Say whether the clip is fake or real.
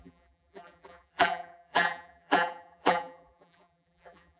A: fake